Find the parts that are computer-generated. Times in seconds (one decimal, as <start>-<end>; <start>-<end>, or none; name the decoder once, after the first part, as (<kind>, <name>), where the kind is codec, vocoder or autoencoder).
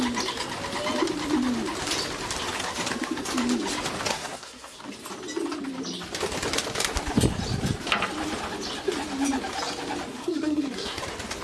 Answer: 4.1-4.8 (codec, SNAC); 10.1-11.0